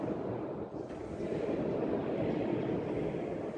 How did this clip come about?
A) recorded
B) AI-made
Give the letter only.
A